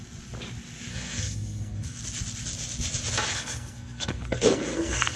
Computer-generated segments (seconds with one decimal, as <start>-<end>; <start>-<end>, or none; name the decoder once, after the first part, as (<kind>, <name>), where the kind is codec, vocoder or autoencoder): 0.9-2.0 (codec, SNAC); 3.3-5.2